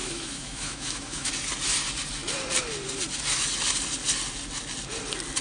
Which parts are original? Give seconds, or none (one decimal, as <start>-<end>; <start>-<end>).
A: 1.3-5.4